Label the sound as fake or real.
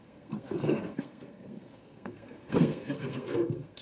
fake